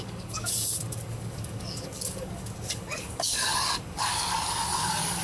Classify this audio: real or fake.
fake